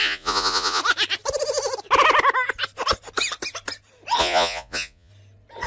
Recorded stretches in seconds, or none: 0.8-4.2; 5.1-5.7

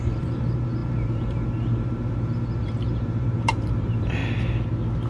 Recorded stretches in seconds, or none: 4.2-5.1

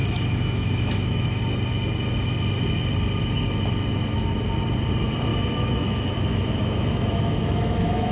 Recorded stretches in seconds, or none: 1.4-5.3

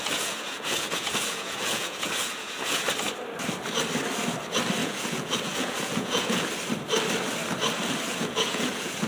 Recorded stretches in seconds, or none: 2.8-4.8; 6.5-8.1

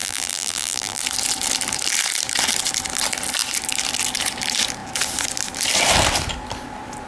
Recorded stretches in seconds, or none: 1.0-7.1

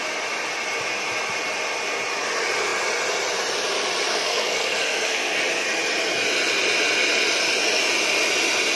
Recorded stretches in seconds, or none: 0.0-4.1; 5.4-8.8

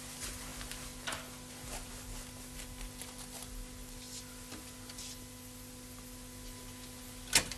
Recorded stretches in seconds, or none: 0.0-7.6

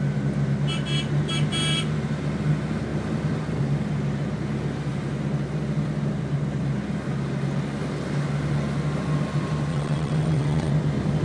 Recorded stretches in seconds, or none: 0.0-9.7; 10.7-11.2